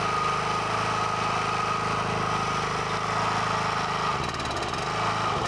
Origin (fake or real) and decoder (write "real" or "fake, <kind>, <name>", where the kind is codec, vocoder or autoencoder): real